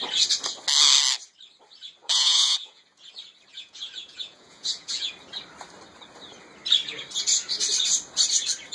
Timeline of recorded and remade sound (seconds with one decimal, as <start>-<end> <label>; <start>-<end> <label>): 0.0-2.0 recorded; 2.0-3.1 remade; 3.1-3.5 recorded; 3.5-5.1 remade; 5.1-8.7 recorded